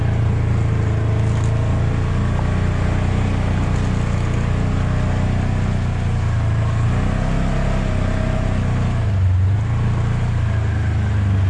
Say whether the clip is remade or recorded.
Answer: recorded